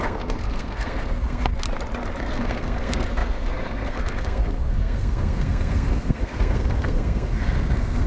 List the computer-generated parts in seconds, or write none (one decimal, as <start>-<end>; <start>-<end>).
0.0-1.5; 2.2-8.1